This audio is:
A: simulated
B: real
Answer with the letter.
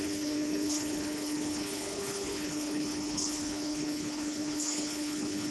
A